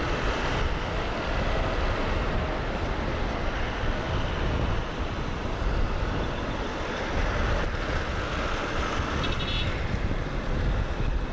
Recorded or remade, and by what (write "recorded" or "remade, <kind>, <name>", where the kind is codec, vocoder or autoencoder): recorded